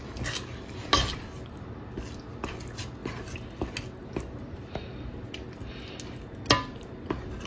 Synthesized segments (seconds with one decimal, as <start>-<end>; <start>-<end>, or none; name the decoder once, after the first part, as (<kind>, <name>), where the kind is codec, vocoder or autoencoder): none